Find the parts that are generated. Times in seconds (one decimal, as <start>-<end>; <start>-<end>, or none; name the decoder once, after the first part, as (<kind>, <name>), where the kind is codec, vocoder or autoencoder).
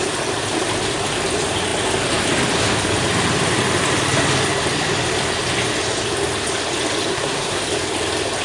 7.1-7.6 (codec, SNAC)